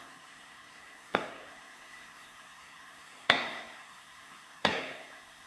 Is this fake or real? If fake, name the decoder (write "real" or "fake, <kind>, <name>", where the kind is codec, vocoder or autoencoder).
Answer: fake, codec, SNAC